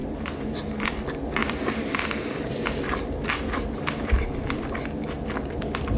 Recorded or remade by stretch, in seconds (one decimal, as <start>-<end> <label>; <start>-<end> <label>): 0.0-1.4 recorded; 1.4-5.0 remade; 5.0-6.0 recorded